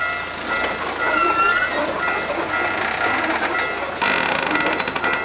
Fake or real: real